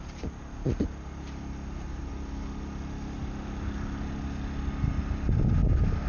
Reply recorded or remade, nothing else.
recorded